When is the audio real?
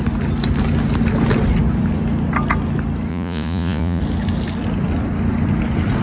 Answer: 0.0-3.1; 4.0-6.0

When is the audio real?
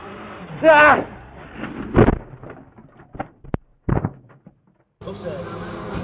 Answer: 0.6-3.7; 5.1-6.0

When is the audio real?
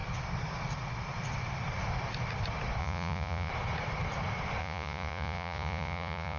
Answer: 0.0-2.8; 3.5-4.6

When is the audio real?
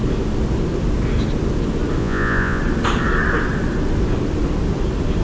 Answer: 0.0-2.0; 2.6-5.2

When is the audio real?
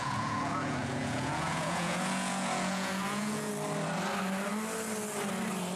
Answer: 3.5-5.8